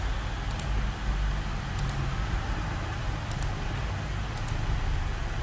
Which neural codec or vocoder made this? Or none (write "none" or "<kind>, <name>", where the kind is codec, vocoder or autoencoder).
none